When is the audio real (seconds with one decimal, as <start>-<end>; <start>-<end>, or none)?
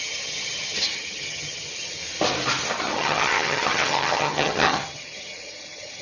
2.0-2.8